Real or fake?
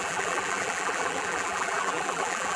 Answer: fake